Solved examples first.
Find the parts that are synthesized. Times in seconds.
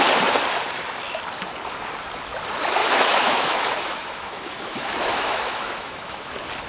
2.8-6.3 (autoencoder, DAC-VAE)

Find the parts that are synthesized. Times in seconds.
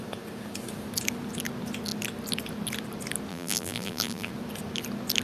3.3-4.3 (vocoder, BigVGAN v2)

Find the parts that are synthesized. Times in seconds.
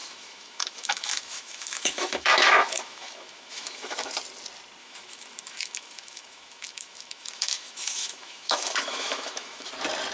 0.0-4.1 (autoencoder, DAC-VAE); 4.8-9.7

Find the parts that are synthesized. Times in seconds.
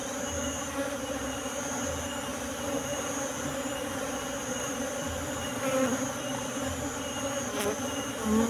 0.0-1.8 (vocoder, BigVGAN v2); 4.4-7.2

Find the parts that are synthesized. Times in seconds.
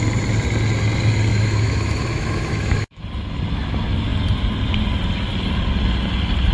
1.3-3.0 (autoencoder, DAC-VAE)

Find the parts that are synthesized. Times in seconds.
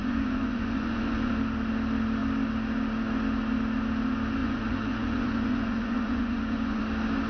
0.0-1.3 (vocoder, Vocos); 4.4-6.8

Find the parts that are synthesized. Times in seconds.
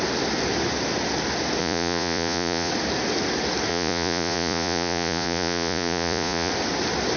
1.6-2.7 (vocoder, Vocos); 3.7-6.5